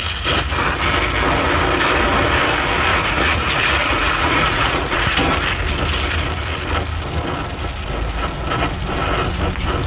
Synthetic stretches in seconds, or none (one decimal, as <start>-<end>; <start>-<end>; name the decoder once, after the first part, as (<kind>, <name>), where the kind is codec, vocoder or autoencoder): 2.9-5.2 (vocoder, Vocos)

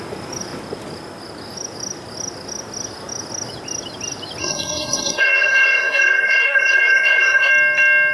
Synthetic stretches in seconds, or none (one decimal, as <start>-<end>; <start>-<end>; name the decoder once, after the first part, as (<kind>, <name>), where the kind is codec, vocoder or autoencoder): 4.4-7.5 (codec, SNAC)

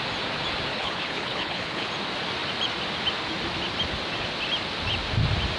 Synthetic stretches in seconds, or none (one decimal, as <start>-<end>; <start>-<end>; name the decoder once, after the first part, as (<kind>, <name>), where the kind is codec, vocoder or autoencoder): 0.7-1.9 (codec, HILCodec)

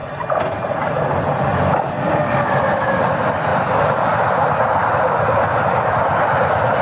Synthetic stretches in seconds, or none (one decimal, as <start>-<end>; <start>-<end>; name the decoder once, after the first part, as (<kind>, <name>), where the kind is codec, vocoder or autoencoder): none

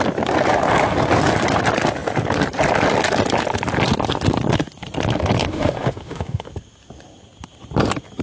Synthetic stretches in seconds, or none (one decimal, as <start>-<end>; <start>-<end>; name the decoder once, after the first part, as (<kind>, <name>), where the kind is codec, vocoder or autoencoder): 5.4-6.5 (autoencoder, DAC-VAE)

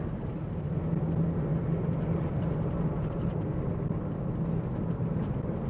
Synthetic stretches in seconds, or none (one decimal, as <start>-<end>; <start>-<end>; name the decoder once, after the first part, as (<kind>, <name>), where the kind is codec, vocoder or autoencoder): none

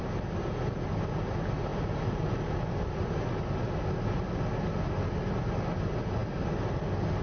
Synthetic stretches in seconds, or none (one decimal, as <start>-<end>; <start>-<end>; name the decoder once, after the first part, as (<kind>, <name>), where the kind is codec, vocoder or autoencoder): none

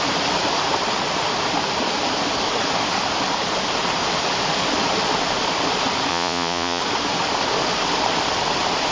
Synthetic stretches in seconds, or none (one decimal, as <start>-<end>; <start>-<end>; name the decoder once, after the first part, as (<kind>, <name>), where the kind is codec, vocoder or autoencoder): 6.1-6.8 (vocoder, Vocos)